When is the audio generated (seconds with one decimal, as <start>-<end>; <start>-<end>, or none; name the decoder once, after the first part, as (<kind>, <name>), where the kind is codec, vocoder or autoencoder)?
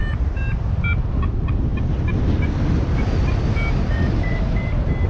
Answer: none